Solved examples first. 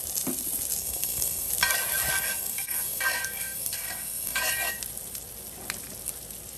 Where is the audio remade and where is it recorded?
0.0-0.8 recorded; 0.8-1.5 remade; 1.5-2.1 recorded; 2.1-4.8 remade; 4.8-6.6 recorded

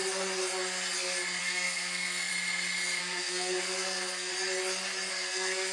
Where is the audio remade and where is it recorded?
0.0-1.4 recorded; 1.4-2.3 remade; 2.3-3.0 recorded; 3.0-4.3 remade; 4.3-5.1 recorded; 5.1-5.7 remade

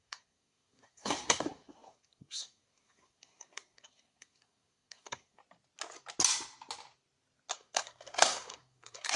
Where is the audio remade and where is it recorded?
0.0-5.4 remade; 5.4-7.5 recorded; 7.5-9.2 remade

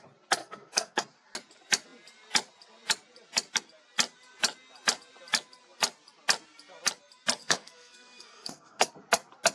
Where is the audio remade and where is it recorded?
0.0-0.4 recorded; 0.4-1.0 remade; 1.0-7.4 recorded; 7.4-8.9 remade; 8.9-9.5 recorded

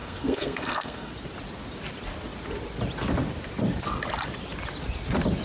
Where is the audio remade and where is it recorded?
0.0-1.1 remade; 1.1-5.4 recorded